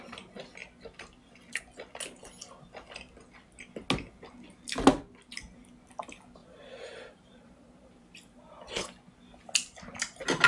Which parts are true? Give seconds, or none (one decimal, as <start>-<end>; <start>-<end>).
0.0-6.4; 8.6-10.5